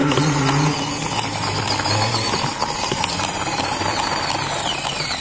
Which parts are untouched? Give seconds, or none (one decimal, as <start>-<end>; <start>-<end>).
0.0-5.2